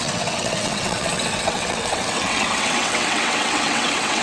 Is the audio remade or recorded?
remade